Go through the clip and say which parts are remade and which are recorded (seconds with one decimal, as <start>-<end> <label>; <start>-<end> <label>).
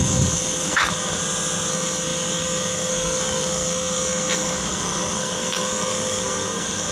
0.0-1.2 remade; 1.2-1.7 recorded; 1.7-6.9 remade